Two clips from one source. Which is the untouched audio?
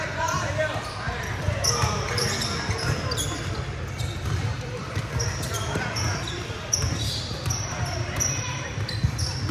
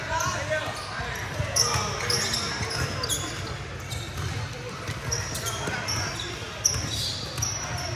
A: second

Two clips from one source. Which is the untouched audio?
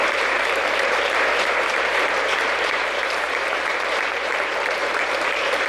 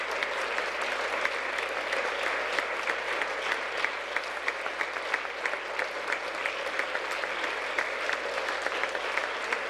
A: second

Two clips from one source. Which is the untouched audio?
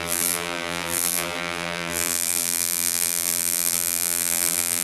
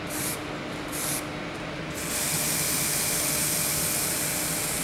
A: second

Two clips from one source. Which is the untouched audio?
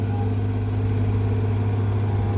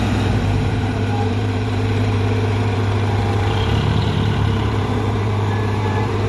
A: first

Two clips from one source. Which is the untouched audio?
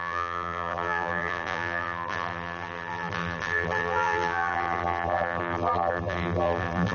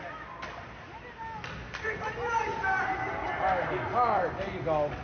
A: second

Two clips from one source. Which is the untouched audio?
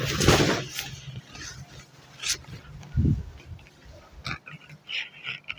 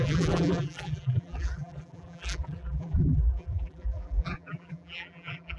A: first